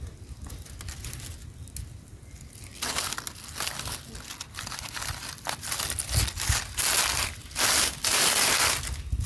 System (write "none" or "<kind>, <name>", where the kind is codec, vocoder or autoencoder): none